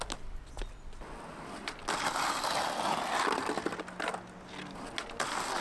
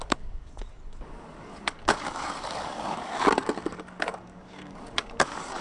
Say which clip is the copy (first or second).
second